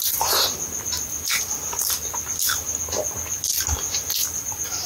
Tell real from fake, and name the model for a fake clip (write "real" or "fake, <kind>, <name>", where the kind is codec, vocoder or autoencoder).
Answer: real